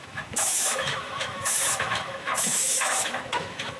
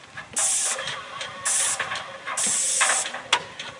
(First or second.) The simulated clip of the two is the first